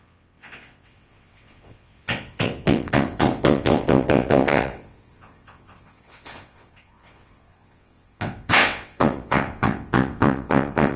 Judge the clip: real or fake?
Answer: fake